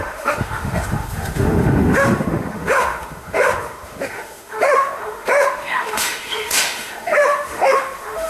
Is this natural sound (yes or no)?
no